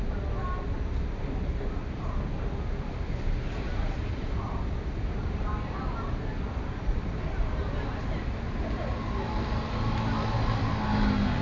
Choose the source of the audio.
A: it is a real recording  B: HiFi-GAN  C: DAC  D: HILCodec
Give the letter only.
A